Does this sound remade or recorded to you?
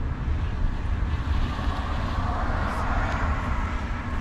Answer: recorded